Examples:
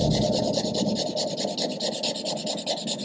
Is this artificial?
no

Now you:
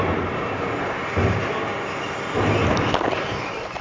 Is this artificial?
no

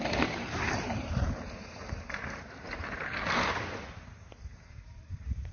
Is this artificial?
yes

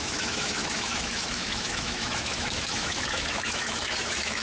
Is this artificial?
yes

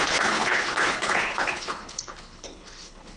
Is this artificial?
yes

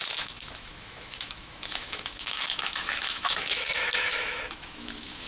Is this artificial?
yes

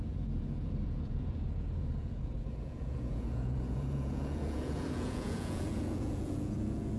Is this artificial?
yes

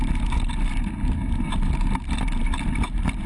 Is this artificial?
no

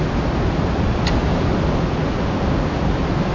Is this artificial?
no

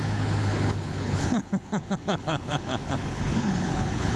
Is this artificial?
yes